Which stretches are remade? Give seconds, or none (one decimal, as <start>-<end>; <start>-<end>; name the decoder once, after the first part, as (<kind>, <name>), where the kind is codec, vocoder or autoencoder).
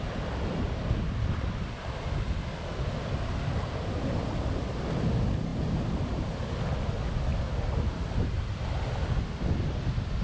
none